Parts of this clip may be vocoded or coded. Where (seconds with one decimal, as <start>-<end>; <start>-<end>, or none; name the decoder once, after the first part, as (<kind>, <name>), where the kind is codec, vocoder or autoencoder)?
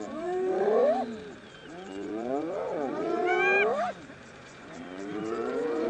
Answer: 0.0-0.8 (vocoder, Vocos); 1.7-3.3; 4.4-5.9